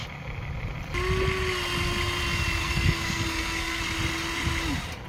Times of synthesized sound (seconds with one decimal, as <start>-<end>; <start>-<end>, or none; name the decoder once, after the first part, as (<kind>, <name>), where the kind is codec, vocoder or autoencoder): 2.6-3.8 (codec, SNAC)